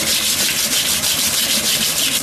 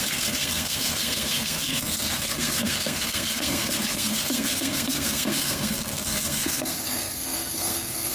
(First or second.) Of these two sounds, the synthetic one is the second